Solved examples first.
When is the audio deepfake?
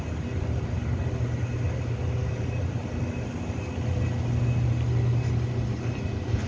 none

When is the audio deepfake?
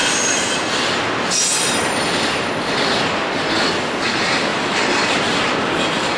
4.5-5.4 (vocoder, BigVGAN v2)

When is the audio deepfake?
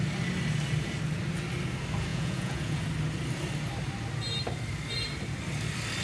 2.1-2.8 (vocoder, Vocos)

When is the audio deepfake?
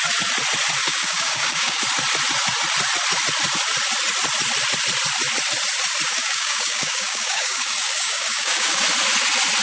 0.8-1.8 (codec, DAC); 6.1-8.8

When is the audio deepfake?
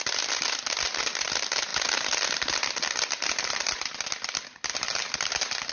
none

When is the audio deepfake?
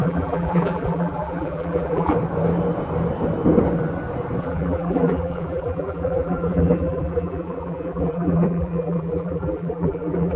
0.0-2.1 (vocoder, BigVGAN v2); 4.4-10.4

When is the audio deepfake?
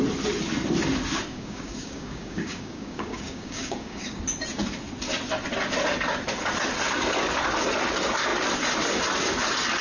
1.3-4.2 (codec, DAC)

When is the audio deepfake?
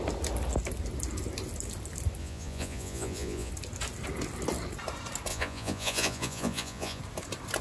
2.2-3.5 (vocoder, Vocos); 5.3-7.0